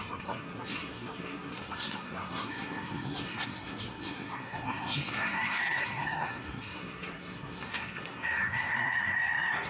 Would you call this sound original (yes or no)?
no